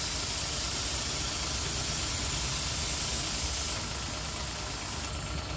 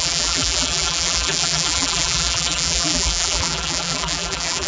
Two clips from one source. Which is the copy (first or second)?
second